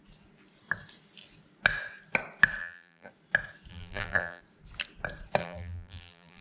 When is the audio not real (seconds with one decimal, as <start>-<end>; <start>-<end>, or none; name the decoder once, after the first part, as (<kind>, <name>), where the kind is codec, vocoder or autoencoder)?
2.6-3.1 (vocoder, BigVGAN v2); 3.7-4.4; 5.4-6.4